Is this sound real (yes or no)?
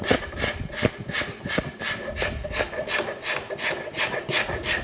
yes